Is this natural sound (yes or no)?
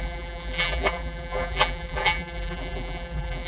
no